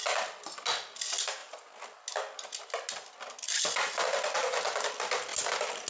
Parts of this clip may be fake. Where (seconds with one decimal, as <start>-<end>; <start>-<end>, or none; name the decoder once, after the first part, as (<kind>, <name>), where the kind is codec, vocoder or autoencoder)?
none